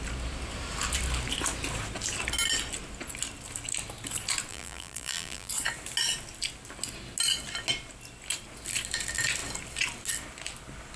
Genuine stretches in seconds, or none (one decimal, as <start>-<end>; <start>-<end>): 0.0-4.5; 5.5-11.0